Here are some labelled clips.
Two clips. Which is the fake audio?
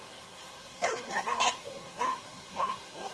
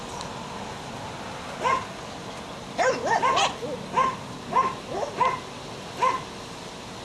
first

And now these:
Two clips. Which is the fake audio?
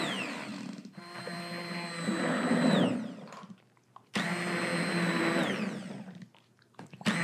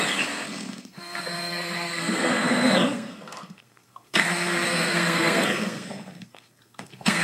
second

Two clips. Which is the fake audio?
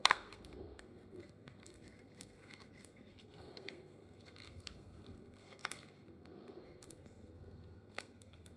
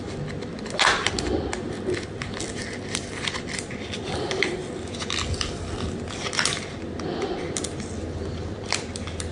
first